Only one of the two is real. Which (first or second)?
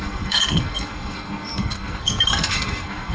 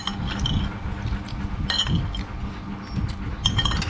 second